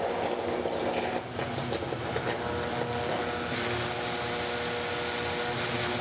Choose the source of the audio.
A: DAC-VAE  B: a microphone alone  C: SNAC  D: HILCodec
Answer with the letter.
B